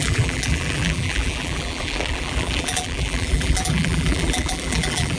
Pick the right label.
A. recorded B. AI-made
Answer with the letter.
B